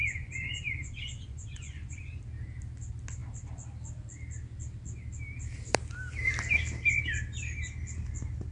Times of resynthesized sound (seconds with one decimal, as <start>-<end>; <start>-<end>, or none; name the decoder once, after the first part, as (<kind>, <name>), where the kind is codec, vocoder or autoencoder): 0.0-2.2 (vocoder, Vocos)